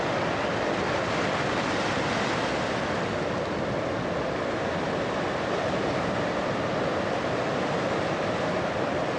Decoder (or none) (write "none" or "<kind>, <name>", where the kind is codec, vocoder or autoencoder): none